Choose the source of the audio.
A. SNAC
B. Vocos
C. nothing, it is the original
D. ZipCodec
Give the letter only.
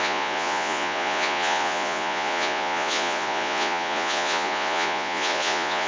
B